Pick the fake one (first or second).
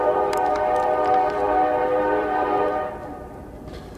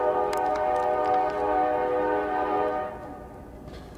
first